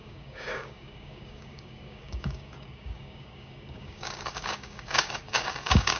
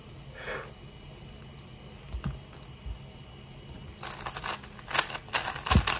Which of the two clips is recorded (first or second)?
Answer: second